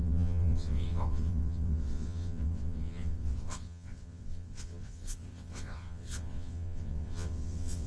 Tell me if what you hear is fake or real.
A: fake